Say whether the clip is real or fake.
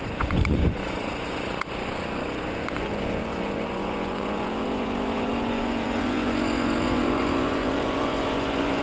fake